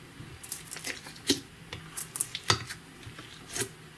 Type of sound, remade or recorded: recorded